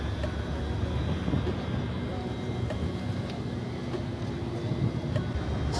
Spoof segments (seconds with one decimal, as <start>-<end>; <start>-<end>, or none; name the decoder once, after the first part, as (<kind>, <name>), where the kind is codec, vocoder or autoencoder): none